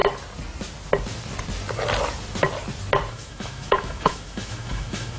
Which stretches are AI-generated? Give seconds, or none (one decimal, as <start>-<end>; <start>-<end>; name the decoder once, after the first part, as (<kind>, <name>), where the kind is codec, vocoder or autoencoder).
3.1-5.2 (autoencoder, DAC-VAE)